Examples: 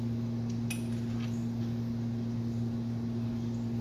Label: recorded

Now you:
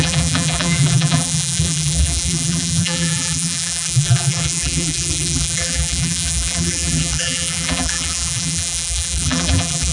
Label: remade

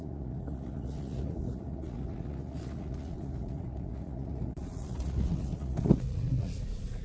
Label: remade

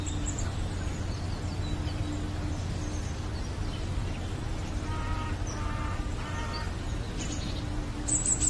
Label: recorded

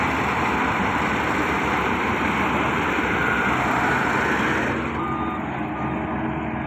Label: recorded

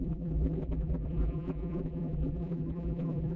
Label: remade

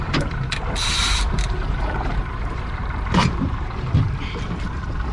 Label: remade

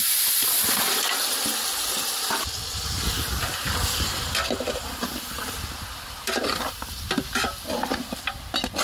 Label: remade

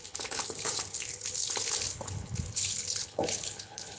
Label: remade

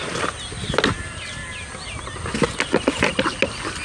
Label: recorded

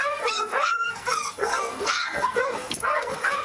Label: remade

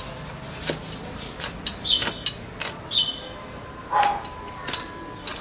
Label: recorded